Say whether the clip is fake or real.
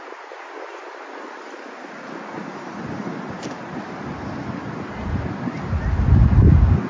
real